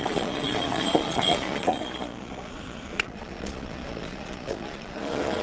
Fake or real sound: fake